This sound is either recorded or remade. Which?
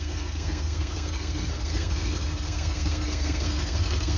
remade